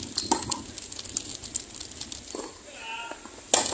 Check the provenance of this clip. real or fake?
real